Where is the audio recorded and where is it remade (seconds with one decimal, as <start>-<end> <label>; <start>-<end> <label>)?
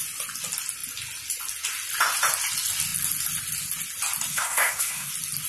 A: 0.0-4.3 recorded; 4.3-5.1 remade; 5.1-5.5 recorded